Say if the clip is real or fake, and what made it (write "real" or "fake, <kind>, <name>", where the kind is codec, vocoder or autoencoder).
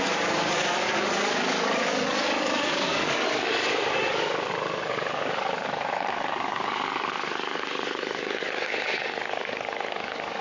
fake, codec, DAC